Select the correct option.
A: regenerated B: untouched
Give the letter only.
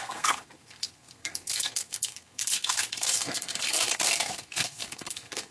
A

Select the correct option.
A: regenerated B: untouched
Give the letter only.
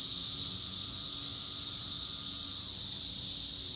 B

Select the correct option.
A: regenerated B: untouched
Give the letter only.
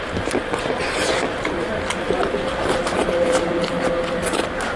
B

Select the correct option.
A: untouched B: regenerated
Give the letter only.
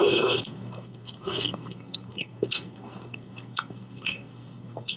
B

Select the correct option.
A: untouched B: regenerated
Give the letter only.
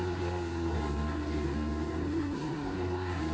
B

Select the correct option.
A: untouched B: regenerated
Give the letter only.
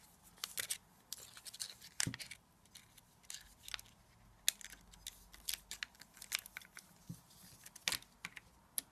A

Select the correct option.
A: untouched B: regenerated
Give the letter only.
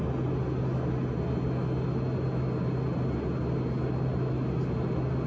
A